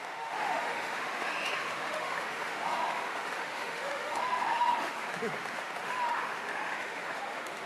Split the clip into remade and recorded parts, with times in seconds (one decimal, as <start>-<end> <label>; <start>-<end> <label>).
0.0-7.7 remade